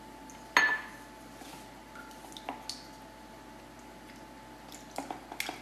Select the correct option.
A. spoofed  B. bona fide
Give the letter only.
B